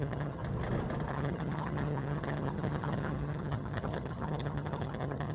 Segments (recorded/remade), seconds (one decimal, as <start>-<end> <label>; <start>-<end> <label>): 0.0-0.4 remade; 0.4-1.1 recorded; 1.1-5.3 remade